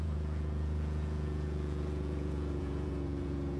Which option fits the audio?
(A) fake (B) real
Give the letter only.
A